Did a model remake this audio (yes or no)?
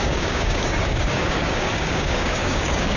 yes